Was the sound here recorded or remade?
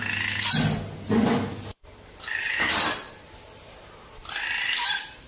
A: recorded